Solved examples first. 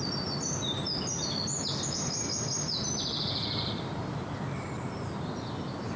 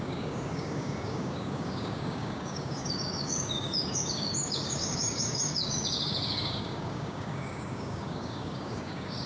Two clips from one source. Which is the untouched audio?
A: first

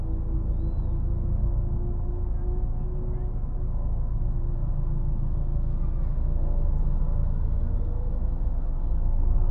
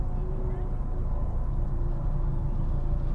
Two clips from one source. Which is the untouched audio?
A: first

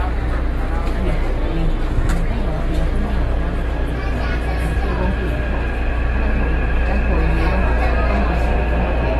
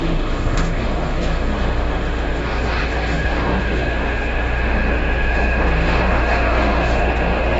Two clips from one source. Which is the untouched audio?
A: first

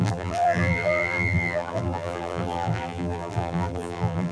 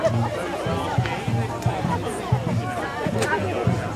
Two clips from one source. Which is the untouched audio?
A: second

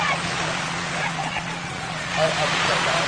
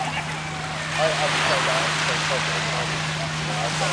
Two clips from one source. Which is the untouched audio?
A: second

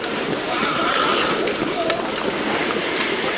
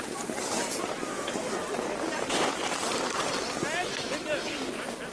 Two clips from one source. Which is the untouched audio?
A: second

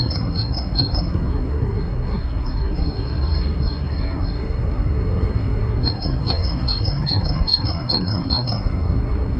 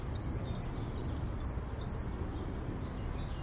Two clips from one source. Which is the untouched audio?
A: second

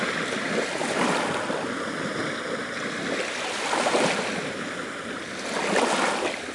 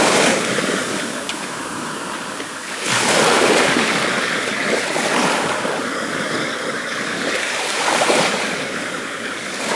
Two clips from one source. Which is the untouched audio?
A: first